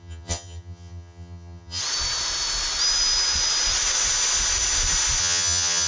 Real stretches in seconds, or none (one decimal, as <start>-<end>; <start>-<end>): 1.8-5.2

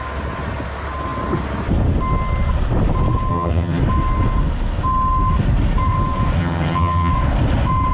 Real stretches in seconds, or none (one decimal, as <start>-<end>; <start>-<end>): 0.0-3.3; 3.8-6.4; 7.1-7.9

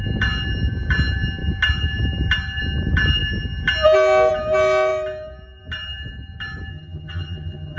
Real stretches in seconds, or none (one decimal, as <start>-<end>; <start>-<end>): 0.0-6.7

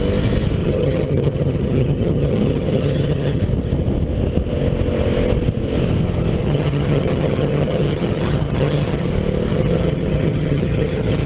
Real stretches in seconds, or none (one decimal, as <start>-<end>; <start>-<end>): 0.0-0.6; 3.4-6.4; 9.1-9.5

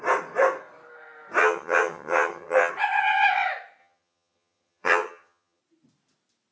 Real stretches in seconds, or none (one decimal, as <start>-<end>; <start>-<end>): 0.0-1.4; 2.7-3.8; 5.6-6.5

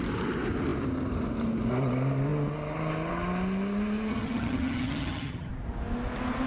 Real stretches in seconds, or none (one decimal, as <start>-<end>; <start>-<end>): 0.0-4.1; 5.5-6.5